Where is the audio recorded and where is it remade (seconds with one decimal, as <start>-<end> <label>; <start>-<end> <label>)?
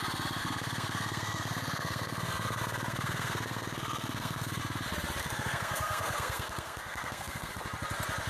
0.0-0.4 recorded; 0.4-4.6 remade; 4.6-5.2 recorded; 5.2-7.5 remade; 7.5-8.3 recorded